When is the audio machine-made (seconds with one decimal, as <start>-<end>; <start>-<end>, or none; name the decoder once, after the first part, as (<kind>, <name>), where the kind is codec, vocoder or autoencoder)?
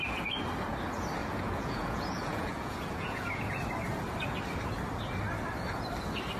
1.2-3.4 (vocoder, Vocos)